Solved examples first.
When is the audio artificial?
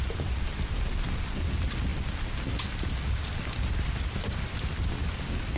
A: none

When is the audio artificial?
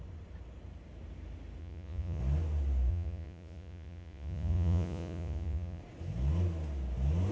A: 1.6-2.2; 2.9-5.8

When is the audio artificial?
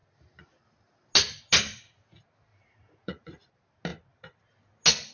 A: 2.5-3.5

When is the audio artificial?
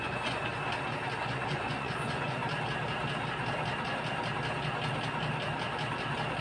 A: 0.0-0.5; 1.2-2.4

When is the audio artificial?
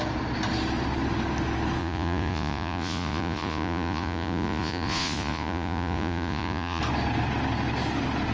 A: 1.8-6.8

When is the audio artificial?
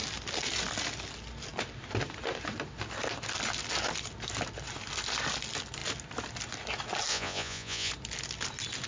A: 7.1-7.9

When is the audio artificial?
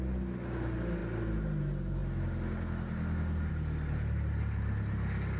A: none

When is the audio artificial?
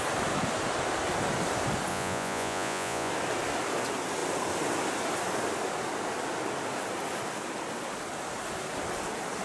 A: 1.9-3.1